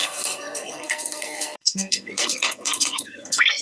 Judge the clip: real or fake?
fake